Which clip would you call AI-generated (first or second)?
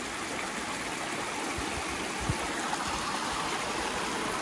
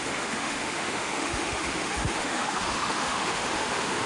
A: second